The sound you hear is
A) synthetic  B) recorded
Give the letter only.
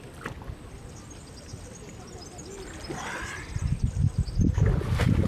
B